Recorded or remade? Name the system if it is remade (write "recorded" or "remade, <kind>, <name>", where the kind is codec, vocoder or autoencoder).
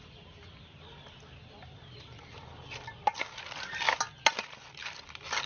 recorded